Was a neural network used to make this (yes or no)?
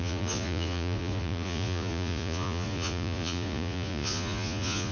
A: yes